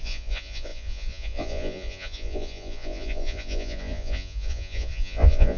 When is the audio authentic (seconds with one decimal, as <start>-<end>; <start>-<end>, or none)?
none